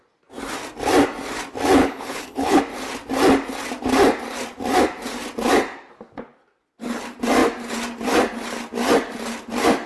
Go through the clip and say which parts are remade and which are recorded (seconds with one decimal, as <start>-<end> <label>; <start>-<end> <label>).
0.0-1.8 recorded; 1.8-2.6 remade; 2.6-9.9 recorded

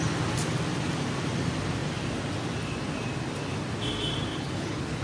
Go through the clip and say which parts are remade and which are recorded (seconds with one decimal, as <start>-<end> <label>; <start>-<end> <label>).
0.0-4.3 recorded; 4.3-5.0 remade

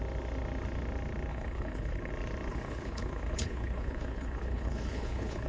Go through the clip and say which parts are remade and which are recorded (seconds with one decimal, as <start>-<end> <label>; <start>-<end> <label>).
0.0-1.3 recorded; 1.3-2.1 remade; 2.1-2.5 recorded; 2.5-5.5 remade

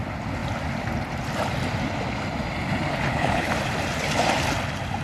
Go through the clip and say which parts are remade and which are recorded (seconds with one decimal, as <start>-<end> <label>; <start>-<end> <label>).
0.0-2.9 recorded; 2.9-3.5 remade; 3.5-5.0 recorded

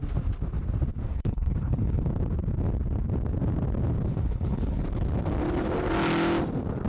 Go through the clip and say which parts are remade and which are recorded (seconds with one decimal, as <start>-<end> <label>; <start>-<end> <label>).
0.0-1.1 recorded; 1.1-2.0 remade; 2.0-4.1 recorded; 4.1-4.8 remade; 4.8-6.9 recorded

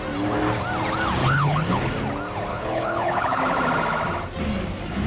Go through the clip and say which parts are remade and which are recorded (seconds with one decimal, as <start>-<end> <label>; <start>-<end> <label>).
0.0-1.2 recorded; 1.2-1.9 remade; 1.9-2.5 recorded; 2.5-3.4 remade; 3.4-5.1 recorded

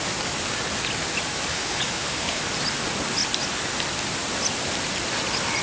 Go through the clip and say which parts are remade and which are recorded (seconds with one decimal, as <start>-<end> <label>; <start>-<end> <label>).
0.0-1.5 recorded; 1.5-2.4 remade; 2.4-5.6 recorded

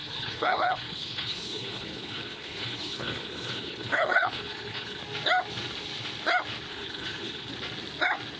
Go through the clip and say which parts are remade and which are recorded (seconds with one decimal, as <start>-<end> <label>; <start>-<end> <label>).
0.0-5.0 remade; 5.0-6.7 recorded; 6.7-7.5 remade; 7.5-8.4 recorded